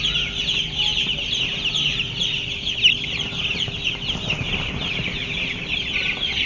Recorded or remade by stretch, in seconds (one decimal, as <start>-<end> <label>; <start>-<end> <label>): 0.0-6.5 recorded